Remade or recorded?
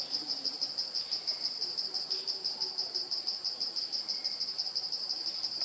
recorded